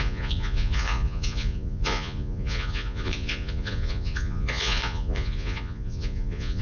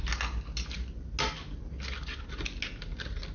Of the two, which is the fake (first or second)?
first